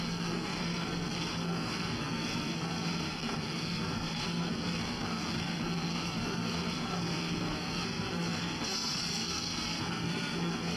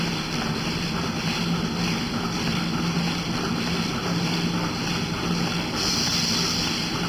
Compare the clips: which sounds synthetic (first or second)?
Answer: first